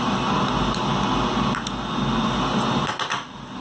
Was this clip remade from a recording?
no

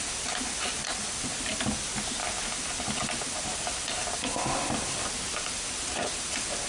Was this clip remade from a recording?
no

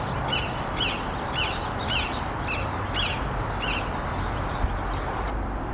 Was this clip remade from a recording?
no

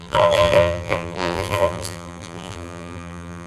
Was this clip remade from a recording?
yes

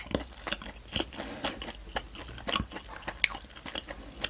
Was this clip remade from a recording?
no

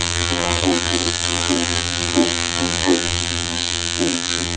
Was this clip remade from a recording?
yes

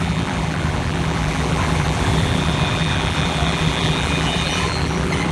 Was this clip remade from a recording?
yes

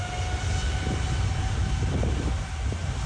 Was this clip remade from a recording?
no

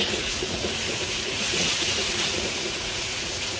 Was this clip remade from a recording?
yes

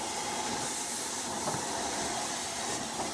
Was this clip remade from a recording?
no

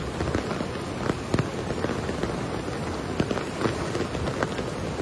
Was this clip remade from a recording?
no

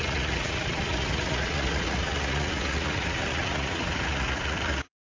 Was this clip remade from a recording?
yes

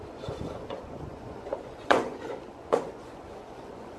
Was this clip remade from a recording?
yes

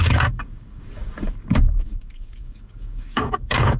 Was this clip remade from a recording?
yes